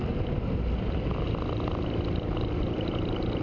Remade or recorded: recorded